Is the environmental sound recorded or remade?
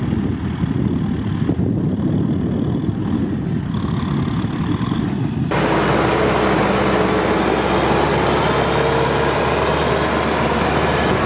recorded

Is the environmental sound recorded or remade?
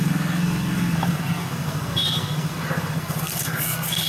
remade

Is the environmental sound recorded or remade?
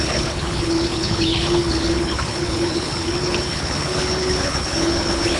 remade